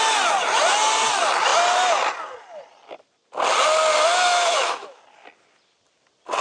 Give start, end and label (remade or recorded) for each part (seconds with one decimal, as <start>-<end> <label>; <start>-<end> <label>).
0.0-4.1 recorded; 4.1-5.0 remade; 5.0-6.4 recorded

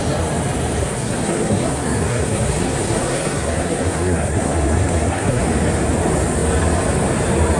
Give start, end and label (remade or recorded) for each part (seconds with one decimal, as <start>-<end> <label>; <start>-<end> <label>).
0.0-0.8 recorded; 0.8-5.4 remade; 5.4-7.6 recorded

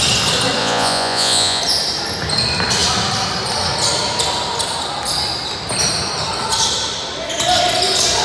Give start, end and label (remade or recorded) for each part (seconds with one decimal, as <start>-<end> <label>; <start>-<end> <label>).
0.0-0.6 recorded; 0.6-1.6 remade; 1.6-8.2 recorded